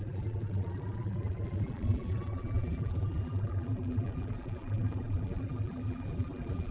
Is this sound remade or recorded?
remade